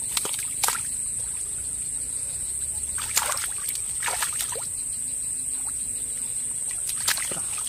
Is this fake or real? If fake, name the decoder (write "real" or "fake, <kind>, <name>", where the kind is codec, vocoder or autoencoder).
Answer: real